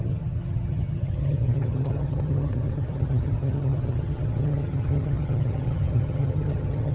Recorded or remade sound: remade